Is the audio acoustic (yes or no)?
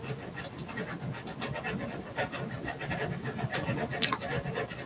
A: yes